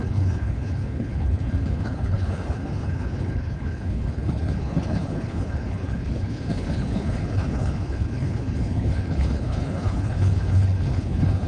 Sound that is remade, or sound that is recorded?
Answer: remade